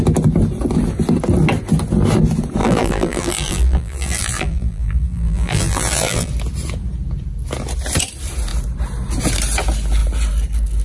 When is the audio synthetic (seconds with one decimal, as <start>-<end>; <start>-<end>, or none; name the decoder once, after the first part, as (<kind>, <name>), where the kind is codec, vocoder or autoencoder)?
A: 2.6-6.3 (vocoder, BigVGAN v2)